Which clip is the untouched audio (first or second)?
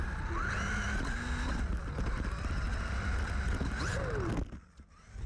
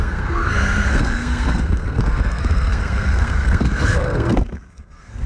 first